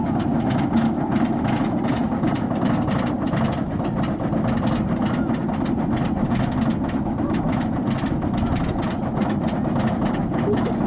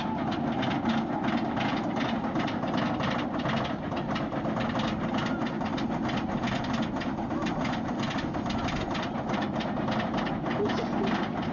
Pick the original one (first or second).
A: second